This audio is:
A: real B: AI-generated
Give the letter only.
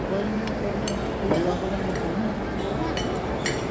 A